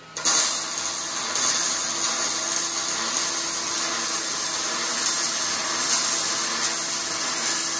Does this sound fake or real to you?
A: real